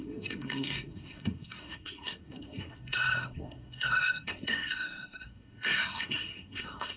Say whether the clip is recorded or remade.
remade